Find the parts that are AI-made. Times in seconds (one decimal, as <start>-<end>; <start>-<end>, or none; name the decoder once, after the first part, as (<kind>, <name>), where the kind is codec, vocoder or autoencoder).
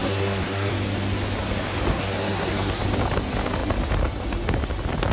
0.0-0.7 (codec, SNAC); 1.9-2.8